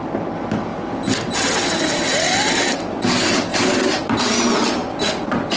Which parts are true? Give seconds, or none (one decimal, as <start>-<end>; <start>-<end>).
0.0-5.6